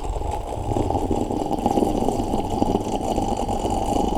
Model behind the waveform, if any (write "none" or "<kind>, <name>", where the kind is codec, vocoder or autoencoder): none